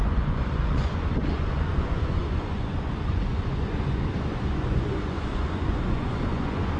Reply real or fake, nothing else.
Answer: fake